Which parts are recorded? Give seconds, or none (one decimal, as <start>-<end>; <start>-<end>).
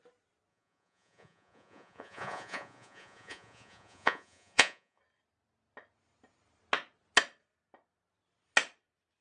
0.0-0.5; 5.0-9.2